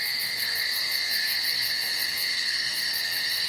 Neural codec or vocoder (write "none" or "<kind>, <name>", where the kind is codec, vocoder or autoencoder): codec, SNAC